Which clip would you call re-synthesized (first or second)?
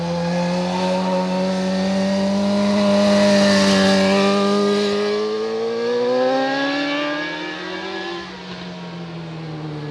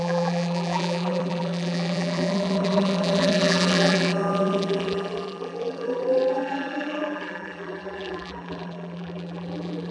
second